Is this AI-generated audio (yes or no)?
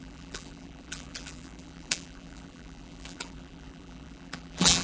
yes